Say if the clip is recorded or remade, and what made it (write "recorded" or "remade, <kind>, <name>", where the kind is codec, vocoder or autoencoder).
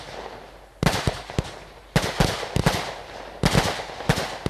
recorded